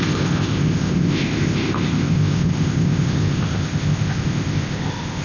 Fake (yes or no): yes